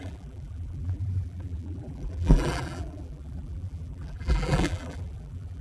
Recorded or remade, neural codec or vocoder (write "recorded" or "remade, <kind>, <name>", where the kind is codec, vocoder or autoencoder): remade, vocoder, BigVGAN v2